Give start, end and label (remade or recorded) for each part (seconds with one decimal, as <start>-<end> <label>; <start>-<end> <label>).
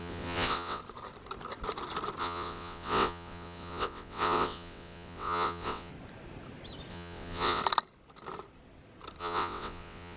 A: 0.0-0.8 remade; 0.8-2.2 recorded; 2.2-5.9 remade; 5.9-6.9 recorded; 6.9-7.6 remade; 7.6-9.2 recorded; 9.2-10.2 remade